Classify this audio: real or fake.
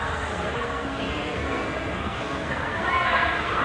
fake